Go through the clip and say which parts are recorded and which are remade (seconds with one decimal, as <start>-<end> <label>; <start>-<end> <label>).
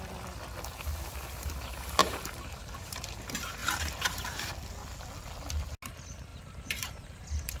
0.0-2.0 recorded; 2.0-3.2 remade; 3.2-3.6 recorded; 3.6-4.5 remade; 4.5-6.3 recorded; 6.3-7.6 remade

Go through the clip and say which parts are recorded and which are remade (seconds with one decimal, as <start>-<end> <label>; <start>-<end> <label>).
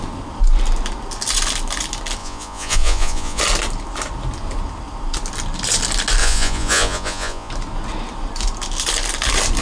0.0-2.2 recorded; 2.2-3.4 remade; 3.4-6.2 recorded; 6.2-7.5 remade; 7.5-9.6 recorded